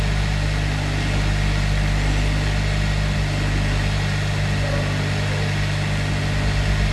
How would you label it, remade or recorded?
recorded